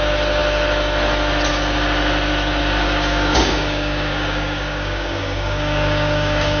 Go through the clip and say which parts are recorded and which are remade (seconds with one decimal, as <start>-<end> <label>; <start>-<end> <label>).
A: 0.0-2.6 recorded; 2.6-6.6 remade